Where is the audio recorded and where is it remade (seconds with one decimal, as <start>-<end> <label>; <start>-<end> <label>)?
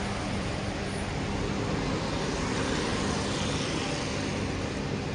0.0-5.1 recorded